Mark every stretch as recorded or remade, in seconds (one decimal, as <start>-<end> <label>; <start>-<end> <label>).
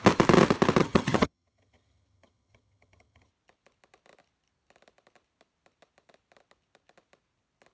0.0-0.8 recorded; 0.8-3.3 remade; 3.3-7.7 recorded